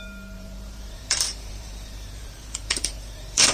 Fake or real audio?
fake